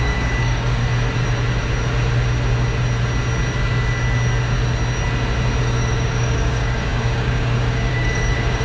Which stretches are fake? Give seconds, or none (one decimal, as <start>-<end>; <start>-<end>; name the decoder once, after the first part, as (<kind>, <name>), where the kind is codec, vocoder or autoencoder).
0.0-0.8 (codec, DAC); 5.6-8.6